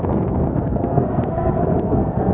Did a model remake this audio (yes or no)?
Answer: yes